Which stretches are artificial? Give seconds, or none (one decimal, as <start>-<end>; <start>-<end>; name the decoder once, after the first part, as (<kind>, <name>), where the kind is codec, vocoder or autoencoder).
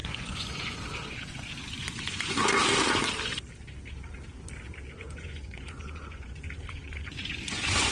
0.0-2.4 (vocoder, Vocos); 4.9-7.9